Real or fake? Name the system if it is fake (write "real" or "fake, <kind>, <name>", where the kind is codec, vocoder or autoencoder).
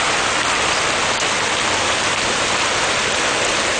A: real